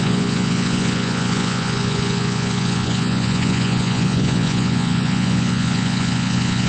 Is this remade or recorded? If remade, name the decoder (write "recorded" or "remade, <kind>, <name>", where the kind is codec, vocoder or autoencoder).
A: remade, vocoder, Vocos